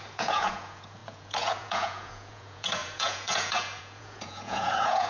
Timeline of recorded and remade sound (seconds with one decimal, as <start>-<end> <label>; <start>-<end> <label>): 0.0-5.1 remade